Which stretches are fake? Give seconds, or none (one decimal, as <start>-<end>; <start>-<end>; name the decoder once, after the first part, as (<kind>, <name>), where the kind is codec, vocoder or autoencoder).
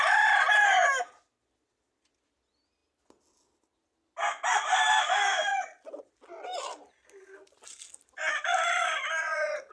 5.5-6.1 (vocoder, Vocos); 9.2-9.7